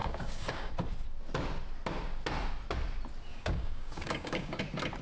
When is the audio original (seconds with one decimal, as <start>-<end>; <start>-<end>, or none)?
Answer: 0.7-3.3; 4.6-5.0